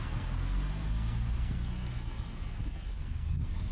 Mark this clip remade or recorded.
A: remade